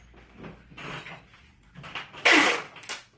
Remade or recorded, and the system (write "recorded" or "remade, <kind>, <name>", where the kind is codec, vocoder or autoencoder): recorded